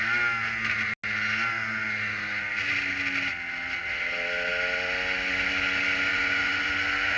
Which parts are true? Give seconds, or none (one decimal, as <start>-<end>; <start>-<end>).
0.0-6.1; 6.7-7.2